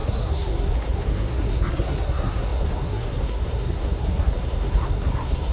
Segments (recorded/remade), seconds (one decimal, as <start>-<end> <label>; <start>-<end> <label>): 0.0-5.5 remade